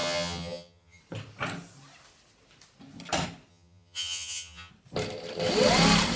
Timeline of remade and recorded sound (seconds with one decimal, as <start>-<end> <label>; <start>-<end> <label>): 0.0-1.0 remade; 1.0-3.5 recorded; 3.5-4.7 remade; 4.7-6.2 recorded